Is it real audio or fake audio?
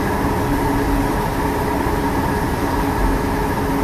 real